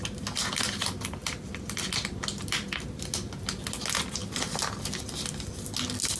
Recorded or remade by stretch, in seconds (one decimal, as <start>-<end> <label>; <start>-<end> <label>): 0.0-1.2 recorded; 1.2-1.8 remade; 1.8-6.2 recorded